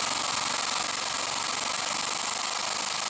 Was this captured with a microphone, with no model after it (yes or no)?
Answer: yes